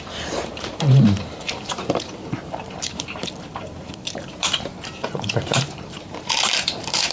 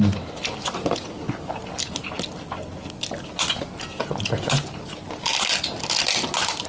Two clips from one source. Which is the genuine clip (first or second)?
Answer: second